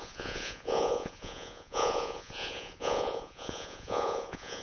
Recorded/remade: remade